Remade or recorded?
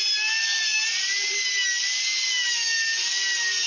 recorded